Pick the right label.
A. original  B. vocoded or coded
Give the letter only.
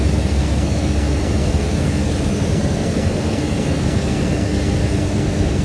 B